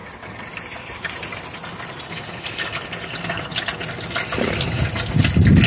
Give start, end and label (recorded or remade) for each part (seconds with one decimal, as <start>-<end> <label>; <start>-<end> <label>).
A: 0.0-5.7 recorded